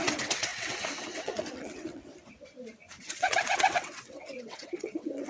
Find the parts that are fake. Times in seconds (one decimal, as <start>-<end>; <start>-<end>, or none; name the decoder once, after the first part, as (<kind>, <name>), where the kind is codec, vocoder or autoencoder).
0.0-2.1 (vocoder, WaveNeXt); 3.0-5.3